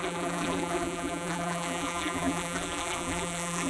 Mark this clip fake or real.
fake